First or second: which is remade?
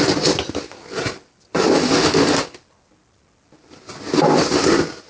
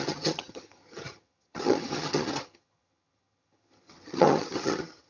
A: second